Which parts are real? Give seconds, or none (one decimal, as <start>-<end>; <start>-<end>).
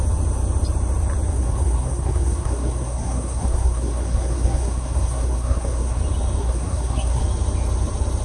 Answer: 0.0-1.3; 6.0-6.4; 7.2-8.2